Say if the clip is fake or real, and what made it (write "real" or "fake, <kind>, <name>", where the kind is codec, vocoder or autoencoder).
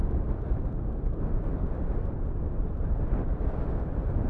real